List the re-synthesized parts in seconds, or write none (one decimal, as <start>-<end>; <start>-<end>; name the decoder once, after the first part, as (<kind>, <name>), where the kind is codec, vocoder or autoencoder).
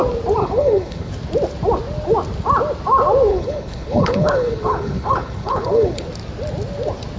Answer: 0.4-1.1 (codec, HILCodec); 3.3-6.1